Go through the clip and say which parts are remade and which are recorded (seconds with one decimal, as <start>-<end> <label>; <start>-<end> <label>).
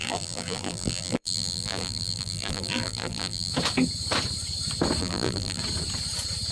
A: 0.0-3.5 remade; 3.5-5.0 recorded; 5.0-5.6 remade; 5.6-6.5 recorded